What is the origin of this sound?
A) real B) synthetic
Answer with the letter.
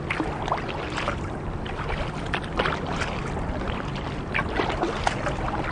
A